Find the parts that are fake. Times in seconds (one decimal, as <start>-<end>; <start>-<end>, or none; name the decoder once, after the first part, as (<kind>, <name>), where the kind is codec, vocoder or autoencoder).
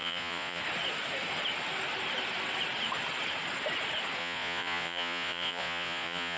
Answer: 0.0-0.6 (vocoder, Vocos); 4.2-6.4